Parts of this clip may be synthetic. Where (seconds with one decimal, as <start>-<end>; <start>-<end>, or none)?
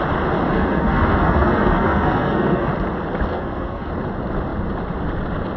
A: 0.5-2.7; 3.3-3.9